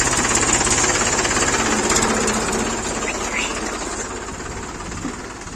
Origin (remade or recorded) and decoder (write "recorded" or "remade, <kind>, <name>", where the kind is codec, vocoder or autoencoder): recorded